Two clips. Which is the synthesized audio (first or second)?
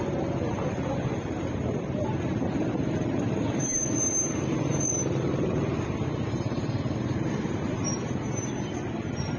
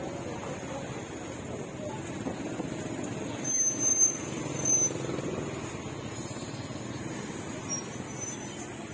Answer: first